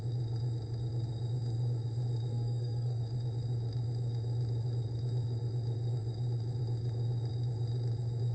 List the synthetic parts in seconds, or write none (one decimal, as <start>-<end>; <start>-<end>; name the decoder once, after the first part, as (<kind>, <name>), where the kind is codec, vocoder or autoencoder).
2.3-3.0 (codec, SNAC)